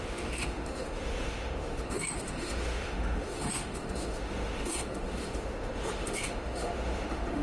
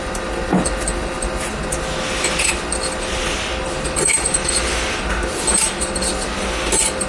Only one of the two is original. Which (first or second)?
second